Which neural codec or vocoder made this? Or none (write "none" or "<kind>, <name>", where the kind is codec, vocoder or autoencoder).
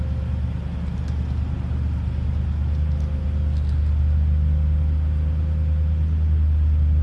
none